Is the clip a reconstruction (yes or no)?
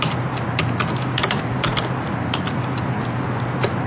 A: no